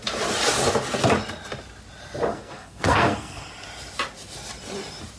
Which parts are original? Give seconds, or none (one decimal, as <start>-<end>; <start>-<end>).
0.0-2.3; 3.5-5.2